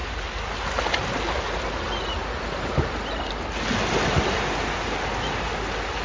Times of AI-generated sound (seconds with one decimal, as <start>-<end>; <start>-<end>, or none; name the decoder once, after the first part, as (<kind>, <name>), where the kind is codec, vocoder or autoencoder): none